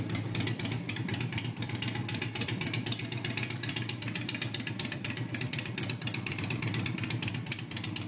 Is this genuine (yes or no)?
no